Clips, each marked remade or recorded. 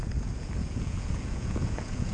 remade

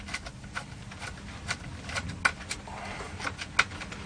recorded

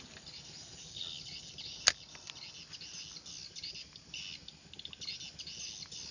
recorded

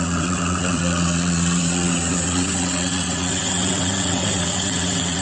remade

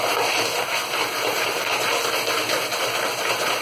remade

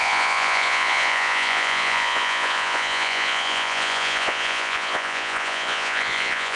remade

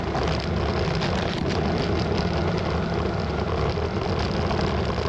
recorded